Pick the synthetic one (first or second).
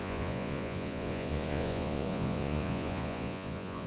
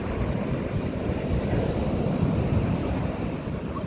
first